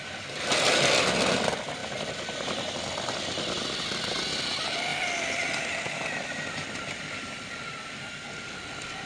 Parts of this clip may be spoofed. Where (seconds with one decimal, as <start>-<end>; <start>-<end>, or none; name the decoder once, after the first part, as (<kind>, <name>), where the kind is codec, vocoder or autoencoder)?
none